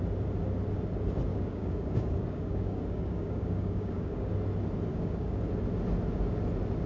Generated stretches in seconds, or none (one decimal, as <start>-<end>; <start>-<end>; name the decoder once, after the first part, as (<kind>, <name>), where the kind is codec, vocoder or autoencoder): 1.3-4.3 (codec, DAC); 4.9-5.4